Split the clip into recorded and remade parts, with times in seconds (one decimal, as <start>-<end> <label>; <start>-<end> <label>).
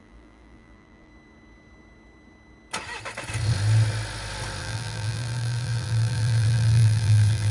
0.0-1.1 remade; 1.1-4.6 recorded; 4.6-7.5 remade